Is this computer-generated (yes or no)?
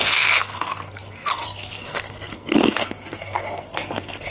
yes